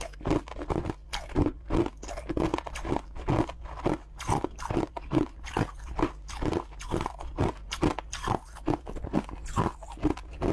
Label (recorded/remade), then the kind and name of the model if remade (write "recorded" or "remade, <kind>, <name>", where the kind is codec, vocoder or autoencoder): recorded